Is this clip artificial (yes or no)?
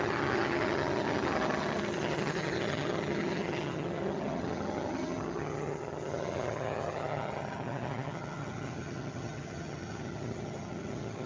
yes